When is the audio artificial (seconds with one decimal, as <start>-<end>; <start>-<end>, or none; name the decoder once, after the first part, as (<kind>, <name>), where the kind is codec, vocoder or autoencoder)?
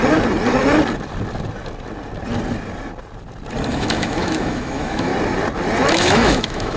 3.7-5.1 (autoencoder, DAC-VAE); 5.9-6.8